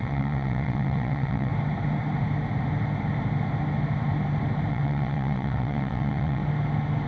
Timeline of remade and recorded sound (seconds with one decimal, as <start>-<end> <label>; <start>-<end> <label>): 0.0-1.5 remade; 1.5-4.7 recorded; 4.7-6.4 remade; 6.4-7.1 recorded